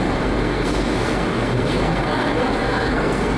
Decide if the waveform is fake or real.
fake